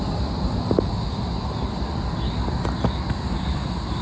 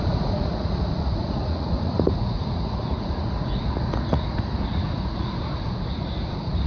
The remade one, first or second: second